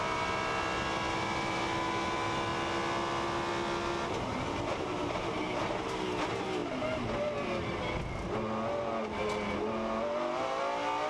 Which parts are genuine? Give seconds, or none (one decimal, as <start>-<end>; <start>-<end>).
0.0-11.1